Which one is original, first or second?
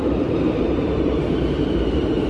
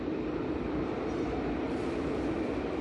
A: second